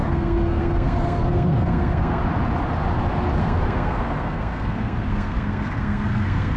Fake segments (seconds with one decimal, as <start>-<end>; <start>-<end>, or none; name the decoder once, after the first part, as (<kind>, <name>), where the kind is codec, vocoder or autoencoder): 0.0-2.2 (codec, SNAC); 3.4-6.6